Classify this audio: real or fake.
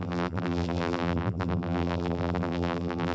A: fake